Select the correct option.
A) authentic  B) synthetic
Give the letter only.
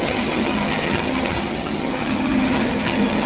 B